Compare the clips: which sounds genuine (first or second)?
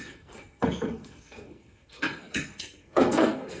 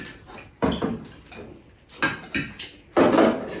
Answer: second